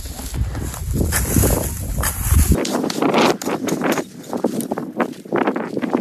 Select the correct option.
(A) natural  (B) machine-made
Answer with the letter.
A